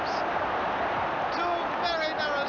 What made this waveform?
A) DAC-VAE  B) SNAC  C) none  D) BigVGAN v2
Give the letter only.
C